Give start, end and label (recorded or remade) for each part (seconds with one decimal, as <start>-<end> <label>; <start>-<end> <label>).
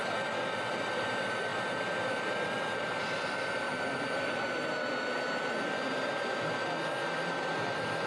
0.0-8.1 recorded